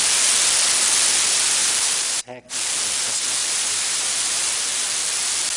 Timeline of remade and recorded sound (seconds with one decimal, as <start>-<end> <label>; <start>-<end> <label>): 0.0-1.6 recorded; 1.6-2.2 remade; 2.2-3.4 recorded; 3.4-4.3 remade; 4.3-5.6 recorded